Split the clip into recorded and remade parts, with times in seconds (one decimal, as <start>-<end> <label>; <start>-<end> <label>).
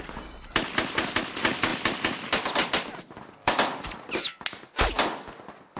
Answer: 0.0-5.8 recorded